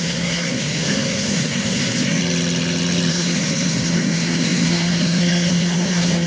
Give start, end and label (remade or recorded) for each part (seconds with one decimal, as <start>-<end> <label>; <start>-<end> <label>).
0.0-2.2 remade; 2.2-3.1 recorded; 3.1-6.3 remade